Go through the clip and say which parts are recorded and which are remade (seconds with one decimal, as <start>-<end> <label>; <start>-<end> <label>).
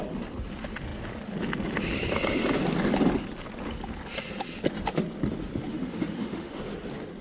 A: 0.0-5.7 recorded; 5.7-6.6 remade; 6.6-7.2 recorded